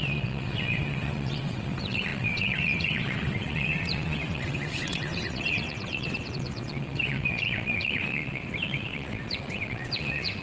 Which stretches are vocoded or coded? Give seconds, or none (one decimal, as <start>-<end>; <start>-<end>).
0.0-10.4